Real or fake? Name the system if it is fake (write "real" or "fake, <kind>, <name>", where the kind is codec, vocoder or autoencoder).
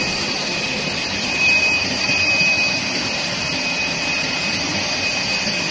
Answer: fake, vocoder, BigVGAN v2